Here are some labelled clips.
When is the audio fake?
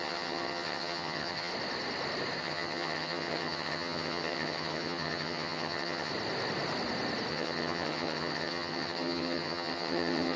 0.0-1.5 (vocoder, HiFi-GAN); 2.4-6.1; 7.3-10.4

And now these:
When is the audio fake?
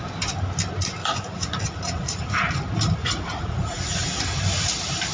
1.0-2.4 (vocoder, Vocos); 3.0-4.2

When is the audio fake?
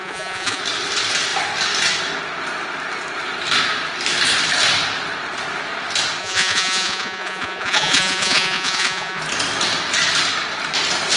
0.0-0.6 (vocoder, Vocos); 6.2-9.2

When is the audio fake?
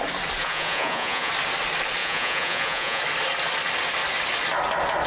0.4-1.3 (vocoder, Vocos); 2.0-3.0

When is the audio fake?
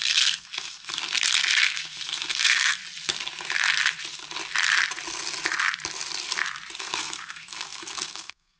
0.0-1.0 (codec, SNAC); 1.6-2.8; 6.8-8.6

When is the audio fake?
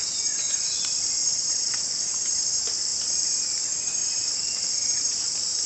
0.0-0.7 (vocoder, Vocos); 1.2-1.8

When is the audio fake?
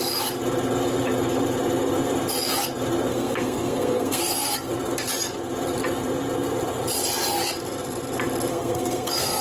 3.1-4.7 (codec, SNAC); 8.5-9.4